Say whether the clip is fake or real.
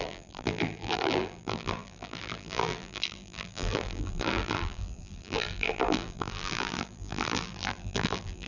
fake